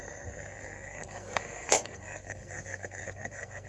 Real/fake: fake